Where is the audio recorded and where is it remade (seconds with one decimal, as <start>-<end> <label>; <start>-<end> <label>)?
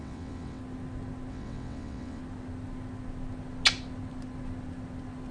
0.0-0.6 remade; 0.6-1.3 recorded; 1.3-2.2 remade; 2.2-5.3 recorded